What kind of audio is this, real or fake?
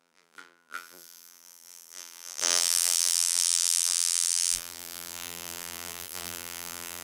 fake